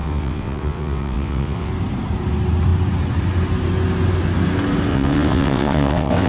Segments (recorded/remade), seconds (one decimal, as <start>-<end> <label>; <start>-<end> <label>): 0.0-1.7 remade; 1.7-4.9 recorded; 4.9-6.3 remade